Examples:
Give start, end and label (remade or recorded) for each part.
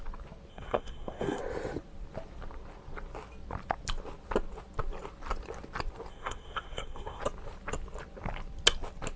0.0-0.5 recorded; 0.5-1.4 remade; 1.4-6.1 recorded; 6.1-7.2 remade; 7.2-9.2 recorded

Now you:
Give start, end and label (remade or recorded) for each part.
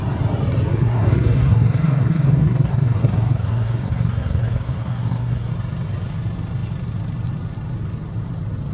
0.0-0.7 recorded; 0.7-5.5 remade; 5.5-8.7 recorded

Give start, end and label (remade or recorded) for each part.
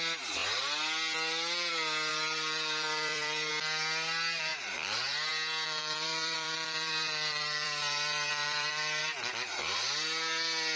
0.0-2.1 recorded; 2.1-3.5 remade; 3.5-5.8 recorded; 5.8-9.0 remade; 9.0-10.8 recorded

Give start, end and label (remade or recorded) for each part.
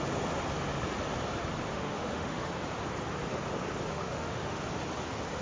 0.0-1.7 recorded; 1.7-2.5 remade; 2.5-3.9 recorded; 3.9-4.6 remade; 4.6-5.4 recorded